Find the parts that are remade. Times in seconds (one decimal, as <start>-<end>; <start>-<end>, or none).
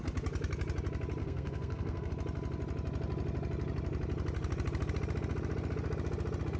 1.2-2.1